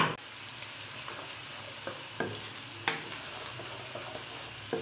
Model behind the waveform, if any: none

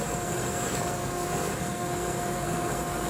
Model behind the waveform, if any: codec, SNAC